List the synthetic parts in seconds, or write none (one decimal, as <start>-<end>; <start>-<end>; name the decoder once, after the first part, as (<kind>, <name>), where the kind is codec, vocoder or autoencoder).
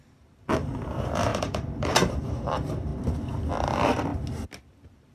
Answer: 0.0-2.9 (vocoder, BigVGAN v2); 3.6-4.1; 4.6-5.1